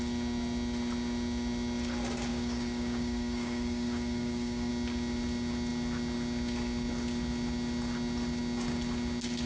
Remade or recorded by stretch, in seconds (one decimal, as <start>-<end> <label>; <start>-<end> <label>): 0.0-2.3 recorded; 2.3-4.7 remade; 4.7-9.5 recorded